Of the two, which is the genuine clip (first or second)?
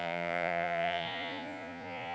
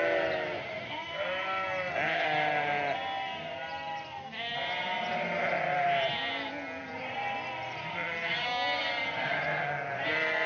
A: second